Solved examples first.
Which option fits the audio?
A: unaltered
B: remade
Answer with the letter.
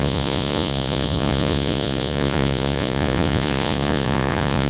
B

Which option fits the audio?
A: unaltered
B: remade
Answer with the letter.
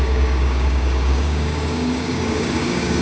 B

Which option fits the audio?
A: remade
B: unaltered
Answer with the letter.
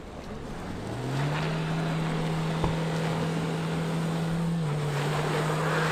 B